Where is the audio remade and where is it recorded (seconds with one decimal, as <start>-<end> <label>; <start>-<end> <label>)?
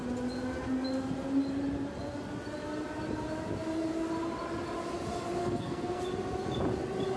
0.0-5.4 recorded; 5.4-6.0 remade; 6.0-7.2 recorded